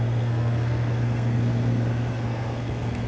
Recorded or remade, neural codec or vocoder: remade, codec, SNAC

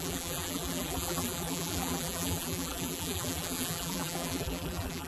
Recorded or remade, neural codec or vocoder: remade, vocoder, BigVGAN v2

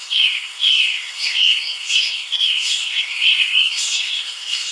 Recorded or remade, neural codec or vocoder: remade, codec, SNAC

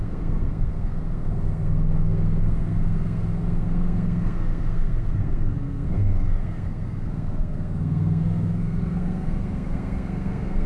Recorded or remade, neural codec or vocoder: remade, codec, SNAC